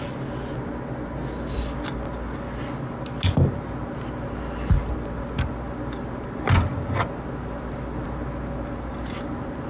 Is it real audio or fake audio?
real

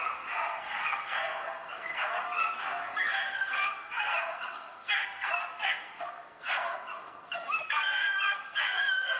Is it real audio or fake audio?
fake